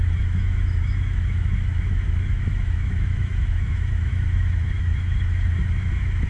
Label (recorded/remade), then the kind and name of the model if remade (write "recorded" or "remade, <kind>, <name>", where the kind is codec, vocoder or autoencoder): remade, autoencoder, DAC-VAE